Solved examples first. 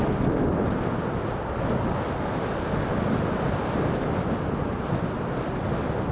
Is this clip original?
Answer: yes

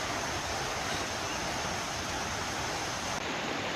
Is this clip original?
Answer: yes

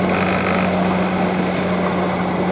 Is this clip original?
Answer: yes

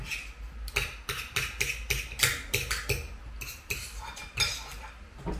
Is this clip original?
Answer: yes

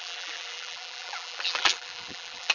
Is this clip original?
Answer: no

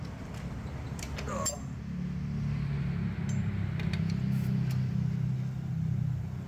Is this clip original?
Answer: yes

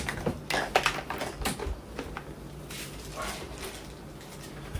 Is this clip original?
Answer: yes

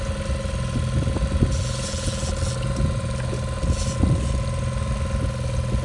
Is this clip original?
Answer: yes